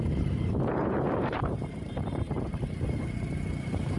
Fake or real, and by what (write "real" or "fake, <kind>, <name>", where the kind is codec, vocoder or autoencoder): fake, vocoder, BigVGAN v2